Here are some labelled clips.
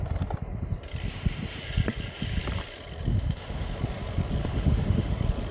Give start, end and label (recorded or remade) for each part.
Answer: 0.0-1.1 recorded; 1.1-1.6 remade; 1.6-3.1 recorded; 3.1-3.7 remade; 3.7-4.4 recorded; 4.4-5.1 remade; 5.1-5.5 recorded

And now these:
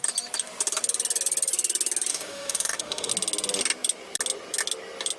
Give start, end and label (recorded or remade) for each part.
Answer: 0.0-2.1 recorded; 2.1-3.1 remade; 3.1-5.2 recorded

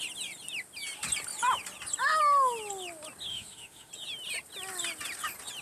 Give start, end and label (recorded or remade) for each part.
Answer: 0.0-3.3 recorded; 3.3-3.9 remade; 3.9-5.6 recorded

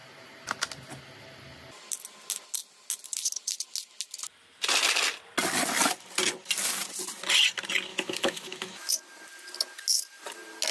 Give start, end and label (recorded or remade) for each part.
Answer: 0.0-7.9 recorded; 7.9-8.9 remade; 8.9-10.7 recorded